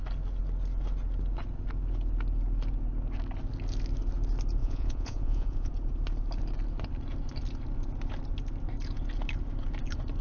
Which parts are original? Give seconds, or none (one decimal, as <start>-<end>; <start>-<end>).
0.0-4.6; 5.7-10.2